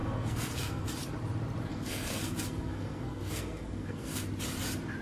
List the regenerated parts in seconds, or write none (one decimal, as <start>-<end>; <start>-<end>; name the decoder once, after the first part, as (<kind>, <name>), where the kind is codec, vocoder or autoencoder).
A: 0.0-0.9 (codec, SNAC); 1.7-4.2